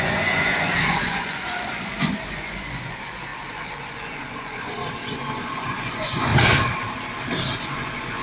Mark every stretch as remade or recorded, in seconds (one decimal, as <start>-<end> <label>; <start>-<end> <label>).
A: 0.0-6.3 remade; 6.3-7.5 recorded; 7.5-8.2 remade